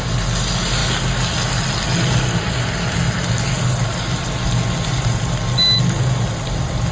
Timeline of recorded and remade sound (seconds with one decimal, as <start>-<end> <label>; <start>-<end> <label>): 0.0-6.9 recorded